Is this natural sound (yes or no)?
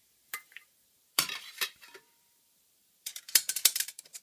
no